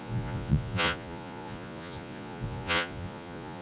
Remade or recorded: remade